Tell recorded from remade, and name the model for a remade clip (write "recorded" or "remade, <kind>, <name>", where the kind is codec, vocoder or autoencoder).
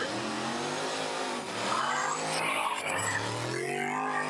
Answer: recorded